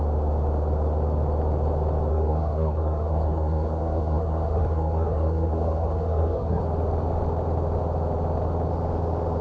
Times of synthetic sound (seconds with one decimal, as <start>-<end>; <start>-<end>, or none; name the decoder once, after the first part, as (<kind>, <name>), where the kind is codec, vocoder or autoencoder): 2.1-6.6 (codec, SNAC)